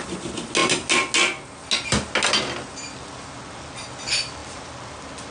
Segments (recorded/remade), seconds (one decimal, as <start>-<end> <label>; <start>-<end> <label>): 0.0-5.3 recorded